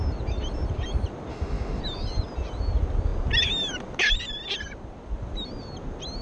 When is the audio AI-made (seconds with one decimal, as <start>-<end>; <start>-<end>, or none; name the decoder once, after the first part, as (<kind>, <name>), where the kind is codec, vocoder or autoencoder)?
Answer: 1.3-1.8 (autoencoder, DAC-VAE)